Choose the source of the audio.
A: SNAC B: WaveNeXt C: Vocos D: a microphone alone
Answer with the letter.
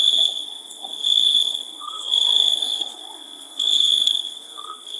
A